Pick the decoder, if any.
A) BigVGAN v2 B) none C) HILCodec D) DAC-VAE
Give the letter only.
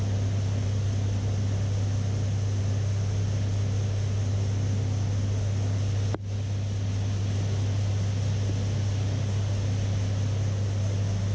B